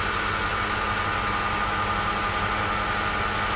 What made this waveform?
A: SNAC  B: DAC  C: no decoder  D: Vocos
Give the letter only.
C